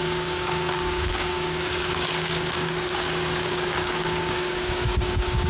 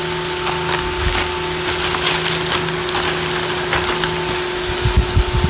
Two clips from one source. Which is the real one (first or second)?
second